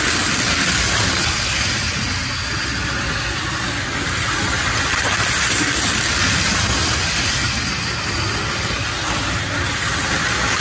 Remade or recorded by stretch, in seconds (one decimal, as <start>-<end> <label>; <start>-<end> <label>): 0.0-10.6 recorded